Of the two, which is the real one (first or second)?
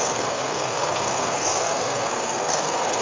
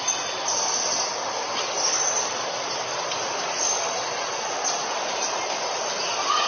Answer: second